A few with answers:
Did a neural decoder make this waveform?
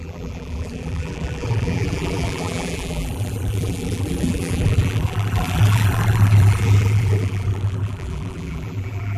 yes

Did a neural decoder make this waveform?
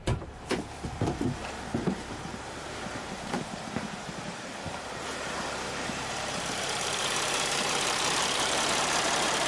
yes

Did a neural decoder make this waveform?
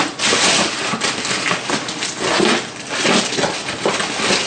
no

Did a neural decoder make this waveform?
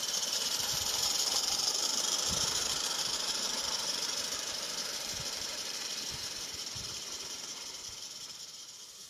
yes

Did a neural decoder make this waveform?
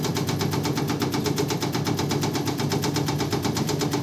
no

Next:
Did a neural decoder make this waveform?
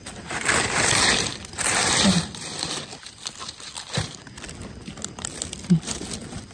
no